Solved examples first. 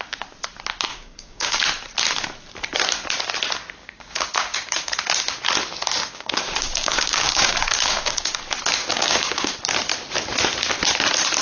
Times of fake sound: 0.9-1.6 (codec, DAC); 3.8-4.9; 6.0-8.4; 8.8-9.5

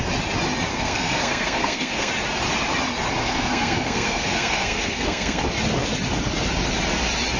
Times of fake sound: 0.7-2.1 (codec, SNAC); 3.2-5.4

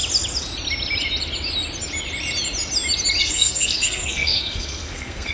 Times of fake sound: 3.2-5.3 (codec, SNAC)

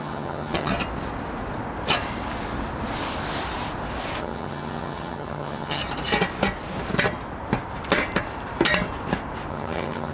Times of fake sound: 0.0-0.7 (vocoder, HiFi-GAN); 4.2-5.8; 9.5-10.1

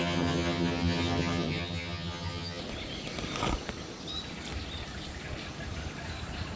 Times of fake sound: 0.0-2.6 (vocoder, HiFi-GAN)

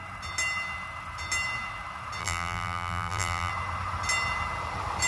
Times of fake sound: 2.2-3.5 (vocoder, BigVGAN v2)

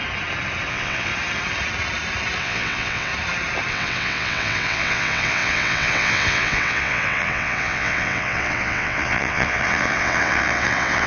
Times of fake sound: 0.7-1.1 (vocoder, WaveNeXt); 2.4-3.1; 3.7-11.1